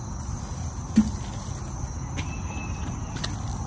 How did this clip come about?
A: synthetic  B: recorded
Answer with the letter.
B